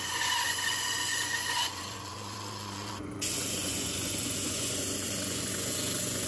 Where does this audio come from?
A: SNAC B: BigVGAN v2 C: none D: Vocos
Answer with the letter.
D